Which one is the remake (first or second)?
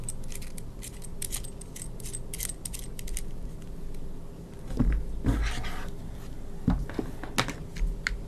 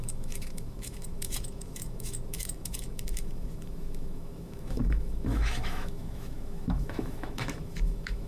second